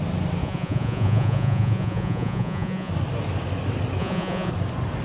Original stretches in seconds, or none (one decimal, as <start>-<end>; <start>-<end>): 0.0-0.4; 2.9-4.0; 4.5-5.0